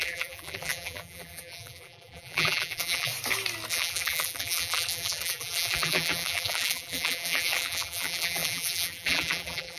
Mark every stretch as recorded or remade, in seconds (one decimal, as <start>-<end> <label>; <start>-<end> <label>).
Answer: 0.0-3.1 remade; 3.1-3.7 recorded; 3.7-9.8 remade